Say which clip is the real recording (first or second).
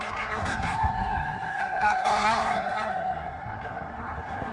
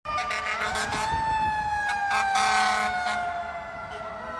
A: second